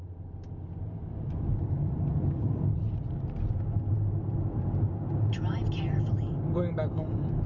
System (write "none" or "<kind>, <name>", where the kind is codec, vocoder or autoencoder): none